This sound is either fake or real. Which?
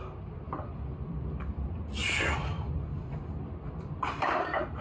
fake